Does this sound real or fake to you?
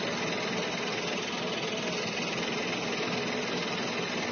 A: real